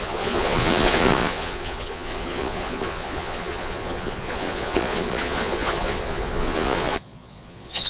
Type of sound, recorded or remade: remade